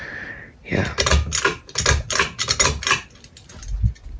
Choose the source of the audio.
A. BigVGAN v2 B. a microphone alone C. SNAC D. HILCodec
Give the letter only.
B